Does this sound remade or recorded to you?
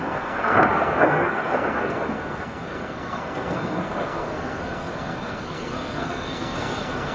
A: remade